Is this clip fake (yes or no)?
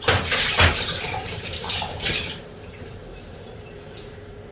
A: yes